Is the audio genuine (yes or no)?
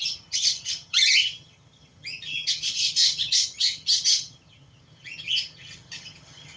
no